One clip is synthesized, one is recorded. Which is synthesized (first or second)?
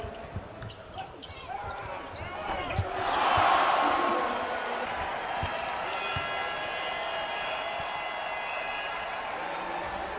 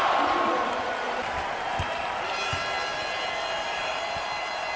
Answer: second